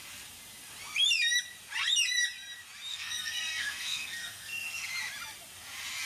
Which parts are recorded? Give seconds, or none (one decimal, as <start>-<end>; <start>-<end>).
0.0-2.9; 4.9-6.1